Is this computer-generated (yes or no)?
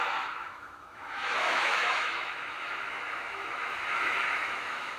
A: yes